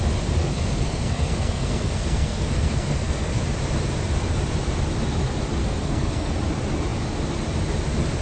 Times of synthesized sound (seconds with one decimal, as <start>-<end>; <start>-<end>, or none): 0.4-3.4; 5.6-6.3